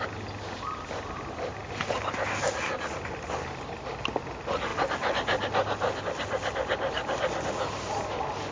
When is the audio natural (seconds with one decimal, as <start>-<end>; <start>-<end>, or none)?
0.0-8.5